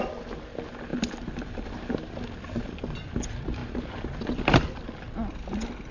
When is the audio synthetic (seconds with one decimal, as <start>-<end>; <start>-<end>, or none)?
none